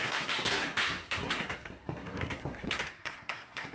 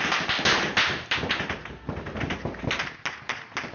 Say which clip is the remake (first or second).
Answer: first